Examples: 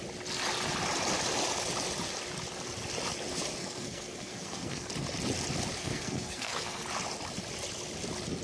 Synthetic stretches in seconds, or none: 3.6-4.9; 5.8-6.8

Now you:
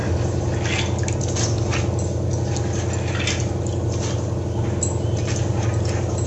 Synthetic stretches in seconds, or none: none

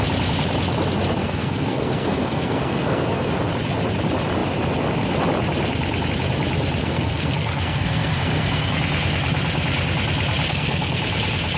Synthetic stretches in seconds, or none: 1.2-3.3; 6.8-8.8; 10.5-11.0

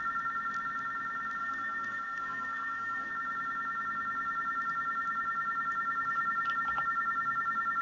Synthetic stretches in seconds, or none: 1.4-3.1

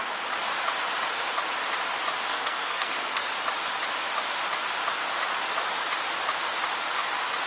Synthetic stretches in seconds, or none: 2.3-3.3

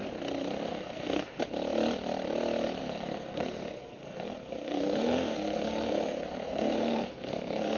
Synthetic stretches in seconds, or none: 0.7-1.4; 2.8-7.8